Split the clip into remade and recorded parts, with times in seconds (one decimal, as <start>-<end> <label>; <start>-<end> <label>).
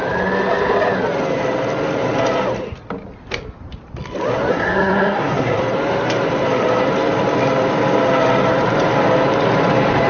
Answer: 0.0-4.5 recorded; 4.5-5.6 remade; 5.6-10.1 recorded